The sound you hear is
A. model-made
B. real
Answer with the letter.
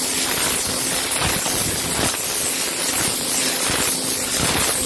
B